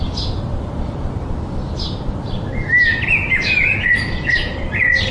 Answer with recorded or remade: recorded